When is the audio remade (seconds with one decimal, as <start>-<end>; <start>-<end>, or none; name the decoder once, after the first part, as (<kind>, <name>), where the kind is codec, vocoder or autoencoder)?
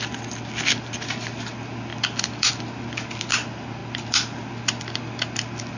none